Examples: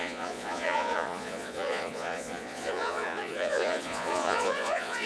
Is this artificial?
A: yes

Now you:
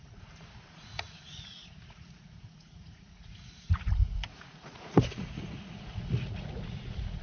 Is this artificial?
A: yes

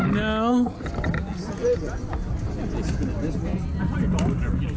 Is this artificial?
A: no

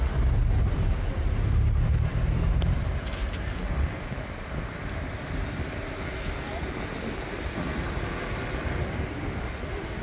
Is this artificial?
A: no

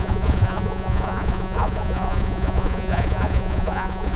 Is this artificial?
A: yes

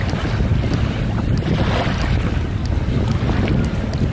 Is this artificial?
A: no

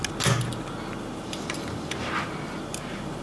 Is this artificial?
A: no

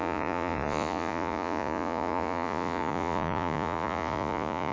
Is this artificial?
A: yes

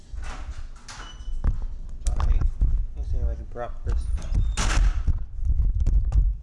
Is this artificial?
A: no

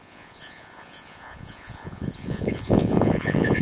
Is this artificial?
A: yes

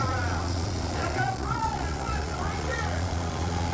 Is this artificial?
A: yes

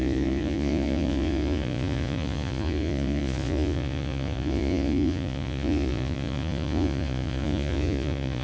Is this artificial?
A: yes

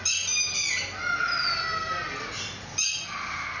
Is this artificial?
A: no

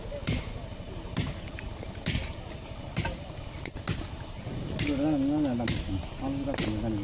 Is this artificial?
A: no